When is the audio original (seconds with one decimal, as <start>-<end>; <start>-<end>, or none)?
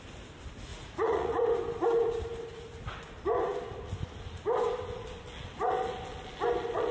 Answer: 0.0-0.7; 1.5-6.9